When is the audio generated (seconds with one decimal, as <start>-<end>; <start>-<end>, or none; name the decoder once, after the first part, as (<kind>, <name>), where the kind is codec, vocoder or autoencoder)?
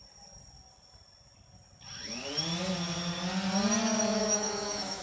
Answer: 4.1-5.0 (autoencoder, DAC-VAE)